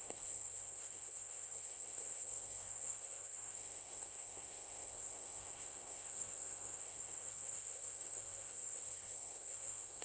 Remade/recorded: remade